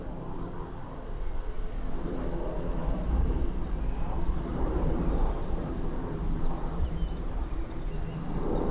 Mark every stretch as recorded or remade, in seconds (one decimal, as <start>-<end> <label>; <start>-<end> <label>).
0.0-2.8 recorded; 2.8-3.4 remade; 3.4-4.5 recorded; 4.5-7.6 remade; 7.6-8.7 recorded

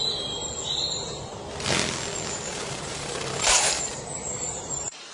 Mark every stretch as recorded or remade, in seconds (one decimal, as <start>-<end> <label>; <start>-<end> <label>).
0.0-1.3 remade; 1.3-2.3 recorded; 2.3-5.1 remade

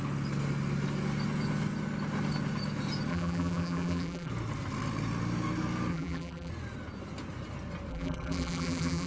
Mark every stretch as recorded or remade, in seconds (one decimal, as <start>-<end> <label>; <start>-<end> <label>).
0.0-3.1 recorded; 3.1-4.3 remade; 4.3-5.9 recorded; 5.9-6.5 remade; 6.5-7.9 recorded; 7.9-9.1 remade

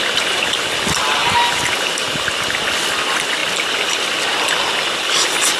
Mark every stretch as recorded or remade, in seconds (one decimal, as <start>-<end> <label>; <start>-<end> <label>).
0.0-1.2 recorded; 1.2-2.2 remade; 2.2-5.6 recorded

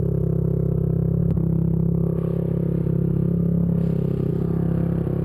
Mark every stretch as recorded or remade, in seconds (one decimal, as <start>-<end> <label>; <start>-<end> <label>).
0.0-5.2 recorded

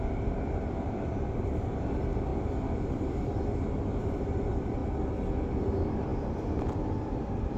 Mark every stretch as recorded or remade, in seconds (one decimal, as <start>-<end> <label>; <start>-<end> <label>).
0.0-2.3 remade; 2.3-3.5 recorded; 3.5-4.8 remade; 4.8-5.6 recorded; 5.6-7.6 remade